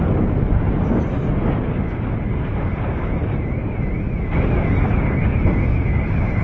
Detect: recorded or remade recorded